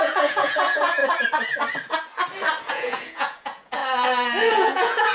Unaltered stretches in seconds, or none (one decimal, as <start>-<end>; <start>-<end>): 1.0-2.7; 3.8-4.5